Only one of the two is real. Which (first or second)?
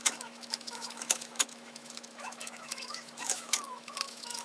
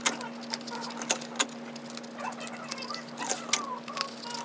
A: second